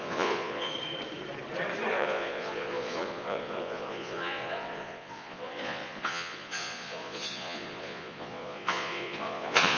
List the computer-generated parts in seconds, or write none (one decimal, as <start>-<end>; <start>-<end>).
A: 0.0-0.7; 1.9-9.8